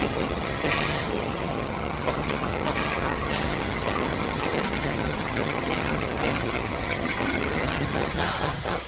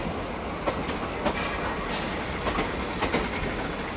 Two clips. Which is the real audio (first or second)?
second